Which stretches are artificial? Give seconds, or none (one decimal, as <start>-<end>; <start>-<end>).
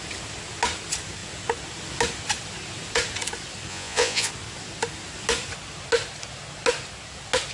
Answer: 3.7-4.3